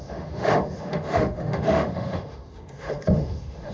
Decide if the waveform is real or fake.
fake